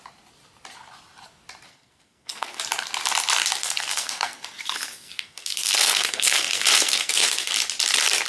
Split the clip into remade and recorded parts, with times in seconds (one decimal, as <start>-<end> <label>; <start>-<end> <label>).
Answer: 0.0-1.7 recorded; 1.7-2.6 remade; 2.6-3.6 recorded; 3.6-7.5 remade; 7.5-8.3 recorded